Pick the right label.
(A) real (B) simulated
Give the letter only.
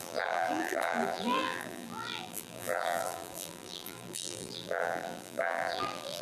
B